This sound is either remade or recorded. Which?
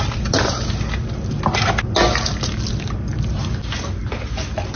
recorded